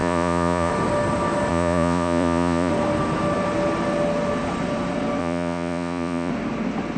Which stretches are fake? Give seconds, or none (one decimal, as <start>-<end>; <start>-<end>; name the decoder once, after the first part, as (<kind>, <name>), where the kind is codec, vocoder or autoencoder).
0.0-0.7 (vocoder, Vocos); 1.5-2.7; 5.2-6.3